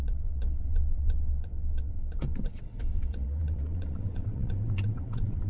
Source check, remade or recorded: remade